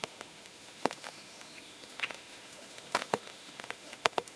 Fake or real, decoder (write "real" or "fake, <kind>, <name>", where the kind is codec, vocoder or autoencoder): fake, autoencoder, DAC-VAE